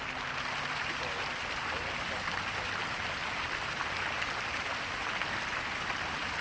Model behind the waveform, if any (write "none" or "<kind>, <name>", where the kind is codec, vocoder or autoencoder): none